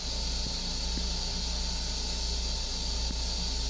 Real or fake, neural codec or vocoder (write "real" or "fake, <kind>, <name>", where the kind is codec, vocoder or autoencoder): real